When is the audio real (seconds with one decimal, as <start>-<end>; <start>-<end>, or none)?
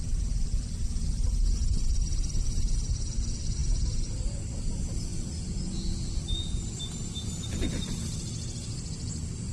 0.0-9.5